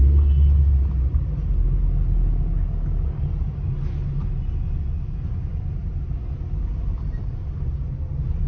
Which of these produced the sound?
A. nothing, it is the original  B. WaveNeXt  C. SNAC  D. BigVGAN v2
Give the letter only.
A